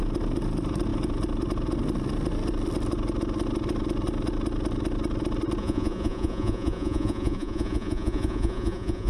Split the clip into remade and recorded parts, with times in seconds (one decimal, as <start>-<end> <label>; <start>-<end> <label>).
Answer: 0.0-5.6 recorded; 5.6-9.1 remade